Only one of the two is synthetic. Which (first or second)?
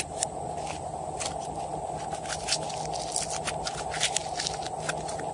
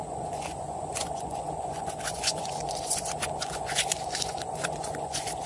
second